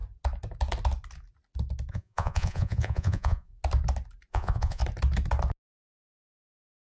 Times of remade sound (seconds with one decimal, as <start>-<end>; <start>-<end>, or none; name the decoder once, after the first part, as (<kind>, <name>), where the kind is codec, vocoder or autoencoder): 1.9-3.5 (vocoder, Vocos); 4.3-4.8; 5.9-6.8